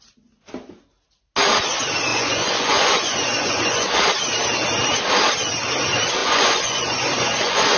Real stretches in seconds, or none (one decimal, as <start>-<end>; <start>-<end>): 0.0-2.1; 4.0-6.2